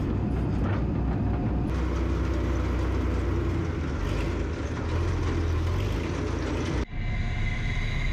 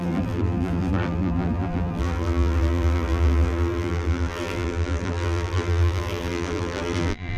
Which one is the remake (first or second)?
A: second